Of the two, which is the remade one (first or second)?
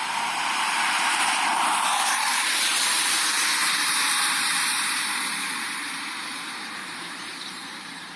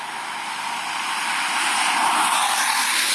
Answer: first